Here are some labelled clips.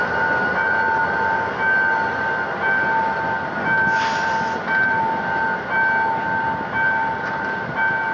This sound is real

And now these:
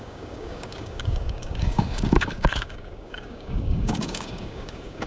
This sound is fake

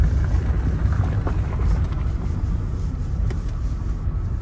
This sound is real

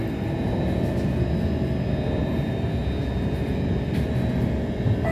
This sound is real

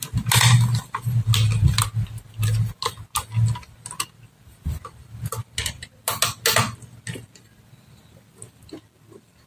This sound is real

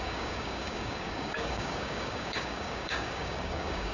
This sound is fake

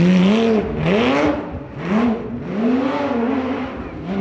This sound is real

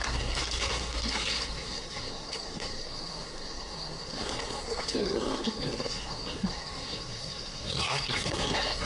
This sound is fake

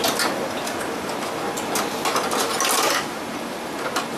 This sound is real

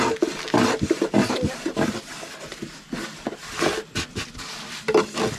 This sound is real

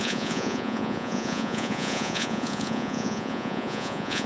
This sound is fake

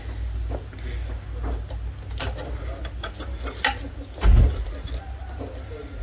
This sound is real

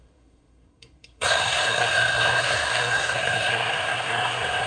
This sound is fake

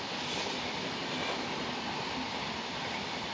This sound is real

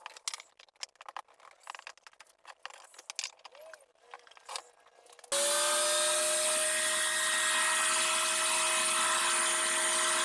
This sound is real